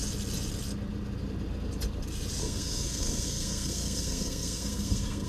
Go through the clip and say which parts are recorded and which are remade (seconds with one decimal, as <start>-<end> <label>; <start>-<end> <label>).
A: 0.0-2.4 recorded; 2.4-5.3 remade